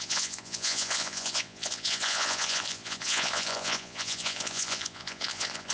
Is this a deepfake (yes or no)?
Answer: yes